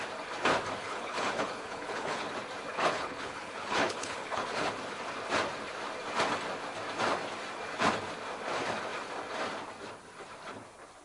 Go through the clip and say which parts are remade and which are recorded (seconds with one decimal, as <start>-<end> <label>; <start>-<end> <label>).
0.0-0.8 recorded; 0.8-2.3 remade; 2.3-2.7 recorded; 2.7-4.7 remade; 4.7-11.0 recorded